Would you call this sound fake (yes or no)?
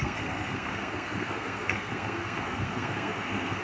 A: yes